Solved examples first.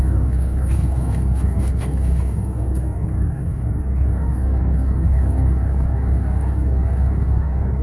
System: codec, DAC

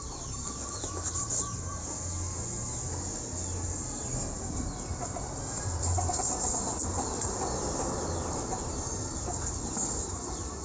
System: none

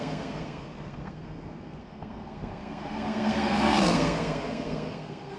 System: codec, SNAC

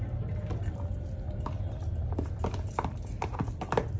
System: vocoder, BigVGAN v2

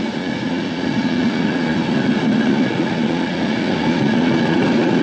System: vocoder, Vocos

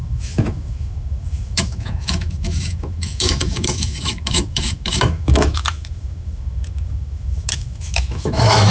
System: autoencoder, DAC-VAE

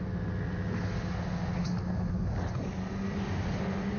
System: none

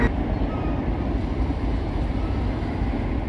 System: none